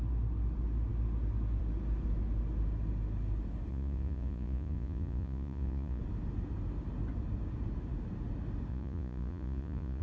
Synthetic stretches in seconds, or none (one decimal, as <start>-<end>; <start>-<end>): 3.7-6.0; 8.7-10.0